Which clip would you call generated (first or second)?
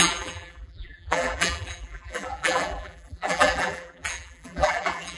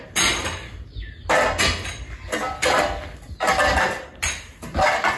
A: first